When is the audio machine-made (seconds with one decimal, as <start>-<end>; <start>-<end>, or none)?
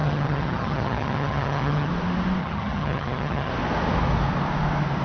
0.0-1.9; 2.4-3.5